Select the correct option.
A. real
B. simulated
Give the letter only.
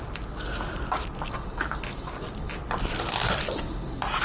A